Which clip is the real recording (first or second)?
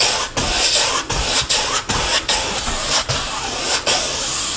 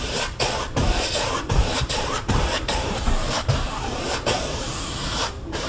first